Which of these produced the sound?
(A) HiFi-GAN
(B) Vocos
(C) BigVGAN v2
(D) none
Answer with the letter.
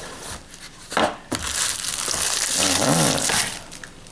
D